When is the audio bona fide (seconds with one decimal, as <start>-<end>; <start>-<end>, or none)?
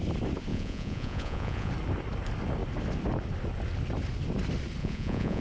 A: 0.0-0.5; 1.7-4.8